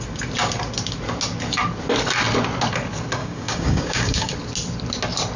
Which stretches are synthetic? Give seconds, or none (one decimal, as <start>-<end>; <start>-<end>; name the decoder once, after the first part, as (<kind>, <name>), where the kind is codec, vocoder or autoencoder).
3.2-4.3 (codec, DAC)